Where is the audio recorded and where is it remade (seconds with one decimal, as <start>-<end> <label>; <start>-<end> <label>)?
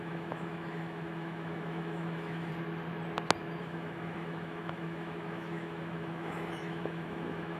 0.0-2.5 remade; 2.5-3.6 recorded; 3.6-7.6 remade